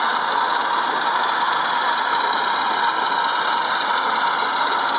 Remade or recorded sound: recorded